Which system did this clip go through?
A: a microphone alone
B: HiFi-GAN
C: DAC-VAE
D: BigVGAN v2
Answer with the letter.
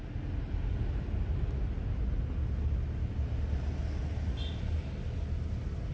A